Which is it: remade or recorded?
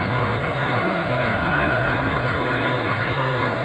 remade